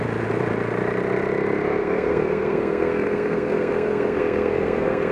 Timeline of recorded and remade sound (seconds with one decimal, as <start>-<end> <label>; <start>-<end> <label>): 0.0-1.8 recorded; 1.8-5.1 remade